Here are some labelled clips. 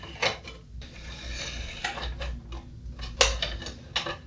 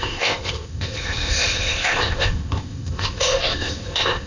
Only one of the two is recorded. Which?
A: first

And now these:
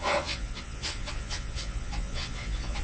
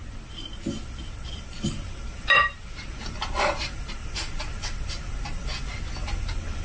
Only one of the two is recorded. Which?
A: second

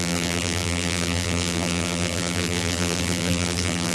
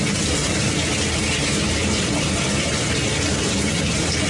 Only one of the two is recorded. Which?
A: second